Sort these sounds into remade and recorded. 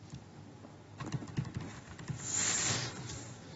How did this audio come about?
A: recorded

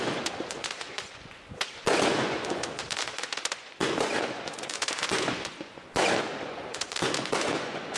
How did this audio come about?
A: remade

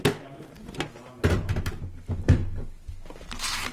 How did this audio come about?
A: recorded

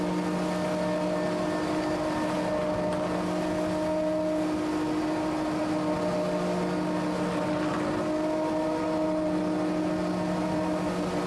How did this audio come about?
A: recorded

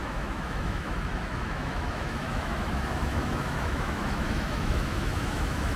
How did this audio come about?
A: remade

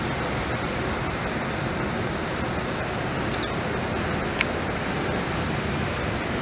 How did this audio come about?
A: recorded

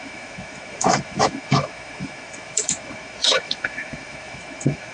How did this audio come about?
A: remade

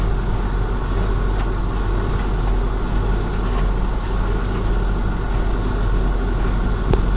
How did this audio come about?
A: recorded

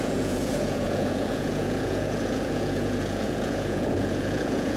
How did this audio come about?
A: remade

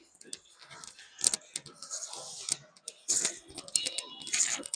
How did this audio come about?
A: recorded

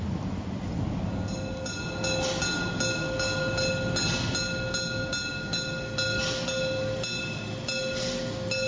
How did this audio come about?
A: recorded